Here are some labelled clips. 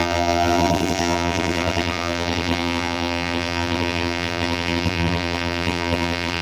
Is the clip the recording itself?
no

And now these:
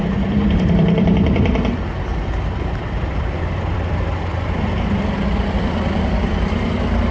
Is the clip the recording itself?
no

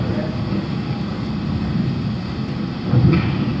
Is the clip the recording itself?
yes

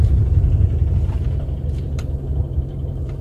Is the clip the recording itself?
no